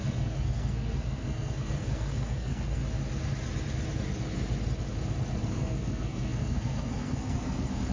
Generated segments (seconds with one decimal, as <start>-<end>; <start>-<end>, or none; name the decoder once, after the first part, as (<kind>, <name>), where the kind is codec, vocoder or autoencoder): 0.0-2.8 (codec, SNAC); 5.5-7.9